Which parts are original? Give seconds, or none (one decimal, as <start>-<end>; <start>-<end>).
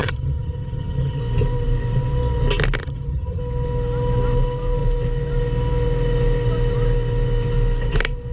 1.2-2.8; 3.4-8.3